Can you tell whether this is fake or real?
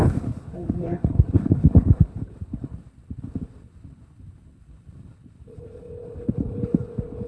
fake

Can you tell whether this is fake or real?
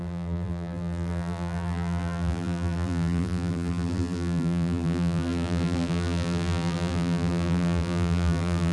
fake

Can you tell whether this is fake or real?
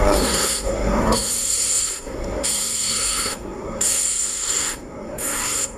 fake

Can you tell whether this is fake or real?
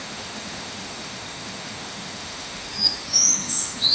fake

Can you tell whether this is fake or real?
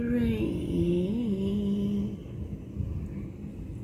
real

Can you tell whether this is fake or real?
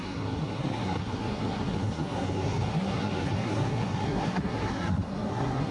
fake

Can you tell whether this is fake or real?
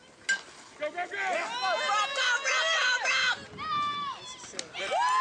real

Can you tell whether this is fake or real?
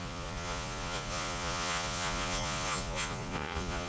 fake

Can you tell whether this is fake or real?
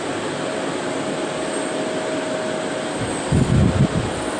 real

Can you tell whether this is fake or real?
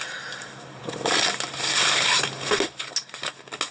real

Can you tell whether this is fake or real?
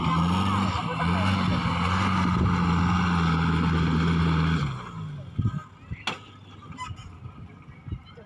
real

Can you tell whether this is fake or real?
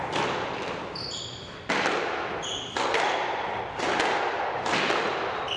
real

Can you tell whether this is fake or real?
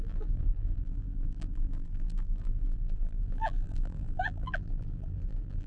fake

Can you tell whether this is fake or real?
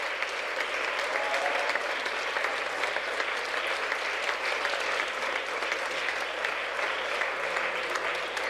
real